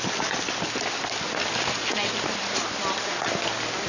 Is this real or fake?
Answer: real